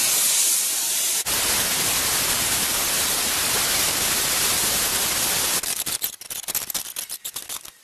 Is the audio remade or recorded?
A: recorded